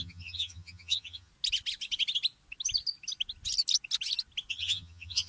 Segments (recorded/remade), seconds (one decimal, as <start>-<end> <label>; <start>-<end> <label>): 0.0-1.3 remade; 1.3-4.5 recorded; 4.5-5.3 remade